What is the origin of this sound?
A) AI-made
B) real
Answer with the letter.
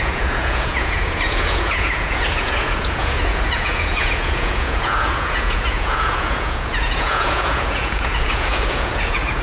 A